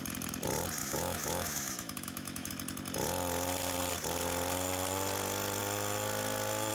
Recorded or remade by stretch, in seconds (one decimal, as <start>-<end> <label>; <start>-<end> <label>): 0.0-0.8 recorded; 0.8-2.5 remade; 2.5-6.7 recorded